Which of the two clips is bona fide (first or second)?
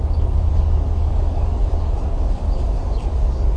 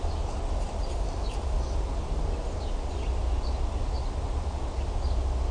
second